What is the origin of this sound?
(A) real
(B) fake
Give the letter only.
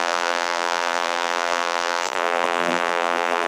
B